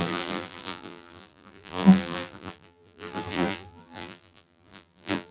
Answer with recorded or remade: remade